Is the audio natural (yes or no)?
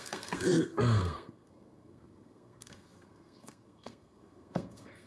no